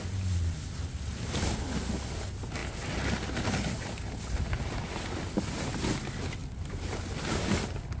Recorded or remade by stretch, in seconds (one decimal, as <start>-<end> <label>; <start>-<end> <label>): 0.0-8.0 recorded